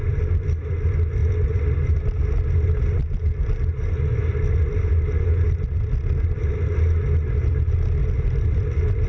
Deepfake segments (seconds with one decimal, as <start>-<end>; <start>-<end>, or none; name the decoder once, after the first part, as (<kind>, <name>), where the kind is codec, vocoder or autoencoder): 8.0-9.1 (vocoder, BigVGAN v2)